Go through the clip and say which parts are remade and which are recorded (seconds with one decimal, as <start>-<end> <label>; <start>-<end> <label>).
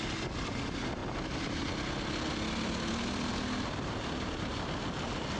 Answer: 0.0-5.4 recorded